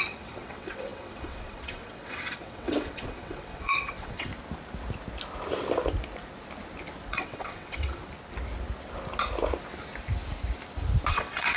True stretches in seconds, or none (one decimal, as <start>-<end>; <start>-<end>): 4.3-7.1; 8.0-11.1